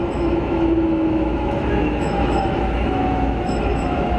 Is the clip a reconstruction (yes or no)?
yes